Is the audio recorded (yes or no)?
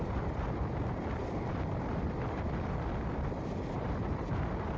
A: no